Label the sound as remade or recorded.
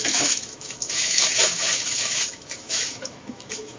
remade